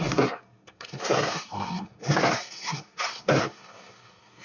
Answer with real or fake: fake